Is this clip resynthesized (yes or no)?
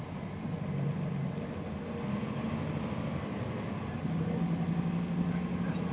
no